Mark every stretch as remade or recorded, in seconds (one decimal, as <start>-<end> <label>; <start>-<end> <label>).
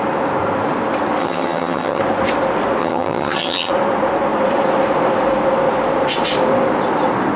0.0-1.2 recorded; 1.2-2.0 remade; 2.0-2.8 recorded; 2.8-3.7 remade; 3.7-7.4 recorded